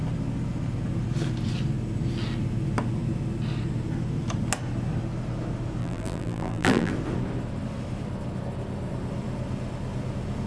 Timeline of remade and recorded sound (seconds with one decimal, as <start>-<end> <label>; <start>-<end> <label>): 0.0-5.8 recorded; 5.8-6.9 remade; 6.9-10.5 recorded